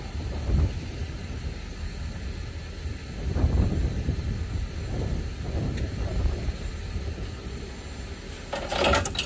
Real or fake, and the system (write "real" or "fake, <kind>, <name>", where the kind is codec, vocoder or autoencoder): real